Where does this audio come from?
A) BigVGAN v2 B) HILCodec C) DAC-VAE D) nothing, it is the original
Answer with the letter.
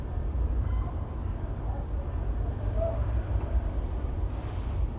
A